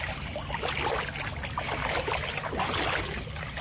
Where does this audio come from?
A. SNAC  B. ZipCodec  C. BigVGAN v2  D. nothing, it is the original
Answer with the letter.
D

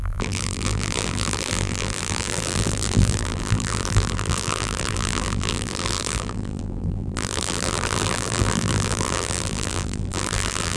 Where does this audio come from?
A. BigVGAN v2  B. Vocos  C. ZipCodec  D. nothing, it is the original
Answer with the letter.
A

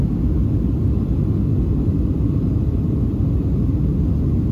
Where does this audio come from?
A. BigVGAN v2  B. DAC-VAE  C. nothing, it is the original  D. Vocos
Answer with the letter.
C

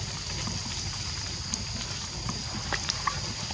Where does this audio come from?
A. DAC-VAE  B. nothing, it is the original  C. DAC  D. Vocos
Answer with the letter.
B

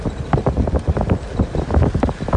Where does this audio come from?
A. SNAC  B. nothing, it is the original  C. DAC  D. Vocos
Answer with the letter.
B